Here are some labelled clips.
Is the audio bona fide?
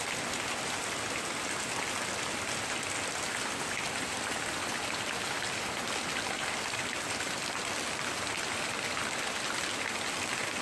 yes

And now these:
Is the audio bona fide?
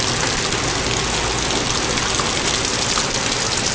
yes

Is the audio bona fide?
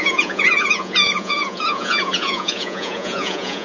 no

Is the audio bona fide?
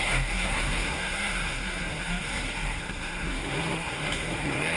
no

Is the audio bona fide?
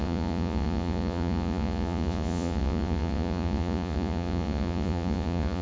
no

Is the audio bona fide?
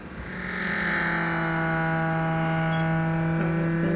yes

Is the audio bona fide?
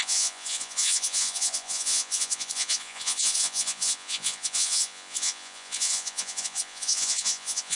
no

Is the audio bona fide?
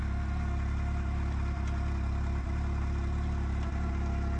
yes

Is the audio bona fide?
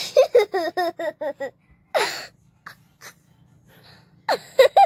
yes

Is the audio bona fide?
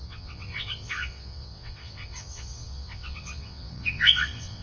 no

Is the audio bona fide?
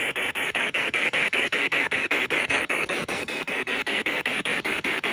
no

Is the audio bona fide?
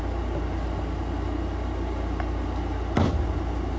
yes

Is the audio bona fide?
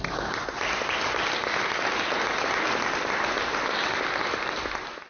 yes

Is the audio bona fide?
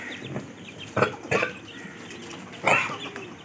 yes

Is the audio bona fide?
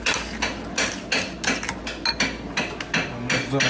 yes